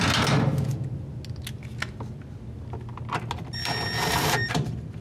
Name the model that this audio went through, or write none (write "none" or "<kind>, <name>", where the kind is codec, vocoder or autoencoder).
none